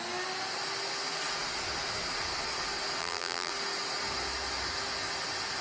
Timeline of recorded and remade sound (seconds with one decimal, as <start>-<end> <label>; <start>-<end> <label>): 0.0-3.0 recorded; 3.0-3.5 remade; 3.5-5.6 recorded